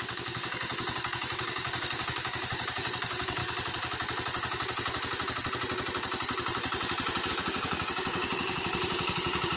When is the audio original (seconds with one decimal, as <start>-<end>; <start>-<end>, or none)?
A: 3.4-7.3